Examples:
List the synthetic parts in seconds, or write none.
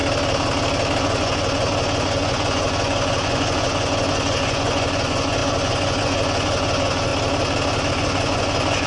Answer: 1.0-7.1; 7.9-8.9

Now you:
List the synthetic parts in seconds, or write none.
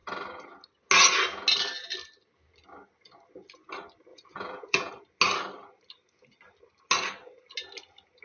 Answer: 4.1-4.9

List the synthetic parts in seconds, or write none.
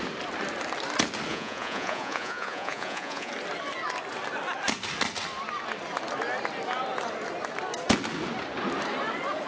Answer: 1.3-3.3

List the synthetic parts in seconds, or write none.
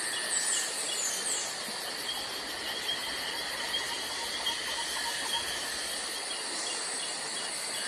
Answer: none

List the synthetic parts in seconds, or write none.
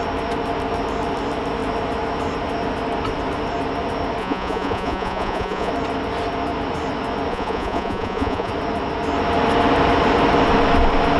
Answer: 4.2-5.7; 7.3-8.5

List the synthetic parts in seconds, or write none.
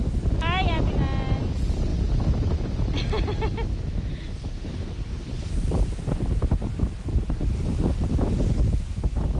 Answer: none